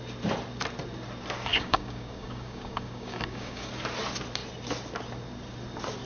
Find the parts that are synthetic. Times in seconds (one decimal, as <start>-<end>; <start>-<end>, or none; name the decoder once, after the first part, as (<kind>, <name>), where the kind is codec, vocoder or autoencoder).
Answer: 1.5-3.7 (codec, DAC)